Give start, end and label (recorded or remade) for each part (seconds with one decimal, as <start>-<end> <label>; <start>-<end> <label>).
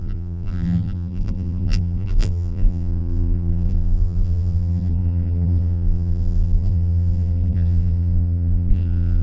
0.0-9.2 remade